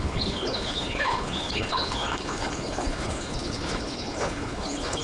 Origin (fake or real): fake